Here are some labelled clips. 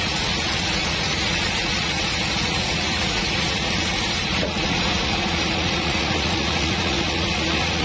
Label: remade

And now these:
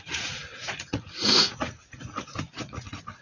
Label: remade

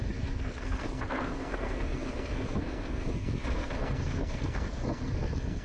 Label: remade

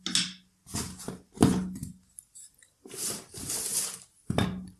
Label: recorded